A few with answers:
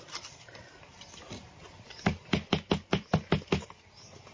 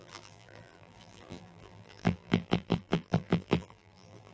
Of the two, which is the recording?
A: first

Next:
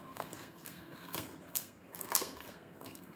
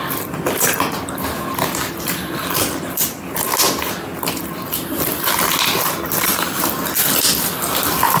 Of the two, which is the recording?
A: second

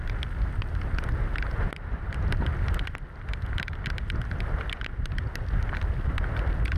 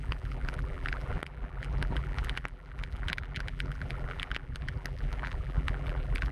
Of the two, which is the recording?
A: first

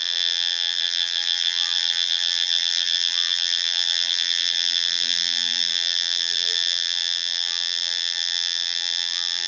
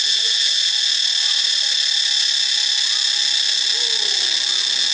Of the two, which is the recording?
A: second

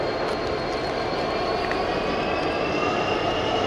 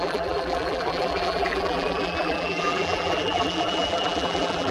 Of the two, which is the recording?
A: first